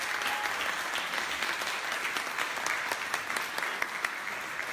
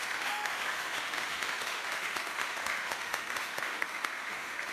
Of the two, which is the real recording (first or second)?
first